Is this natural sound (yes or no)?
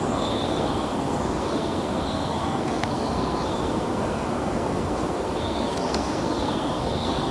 no